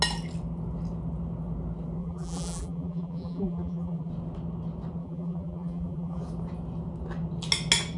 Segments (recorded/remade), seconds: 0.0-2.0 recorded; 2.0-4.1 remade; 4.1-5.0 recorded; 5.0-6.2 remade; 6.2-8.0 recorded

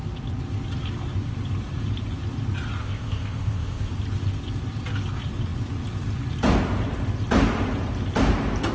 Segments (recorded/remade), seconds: 0.0-2.8 recorded; 2.8-3.9 remade; 3.9-8.7 recorded

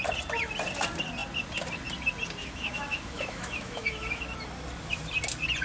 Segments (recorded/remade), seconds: 0.0-2.4 recorded; 2.4-4.2 remade; 4.2-5.6 recorded

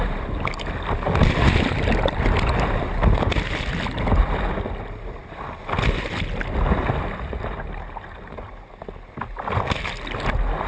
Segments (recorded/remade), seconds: 0.0-10.7 recorded

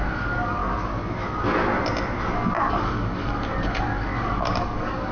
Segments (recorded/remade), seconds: 0.0-0.6 remade; 0.6-2.7 recorded; 2.7-5.1 remade

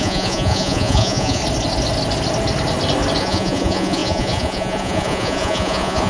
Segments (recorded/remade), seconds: 0.0-1.4 remade; 1.4-3.2 recorded; 3.2-6.1 remade

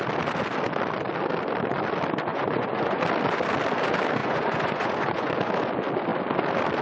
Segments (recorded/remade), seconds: 0.0-2.3 recorded; 2.3-3.0 remade; 3.0-4.2 recorded; 4.2-5.3 remade; 5.3-6.8 recorded